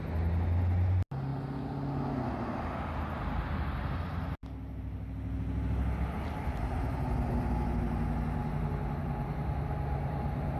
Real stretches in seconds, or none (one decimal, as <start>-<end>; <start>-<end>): 0.0-10.6